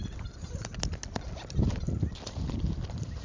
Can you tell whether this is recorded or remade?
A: recorded